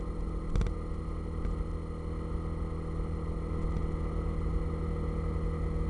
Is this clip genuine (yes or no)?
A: yes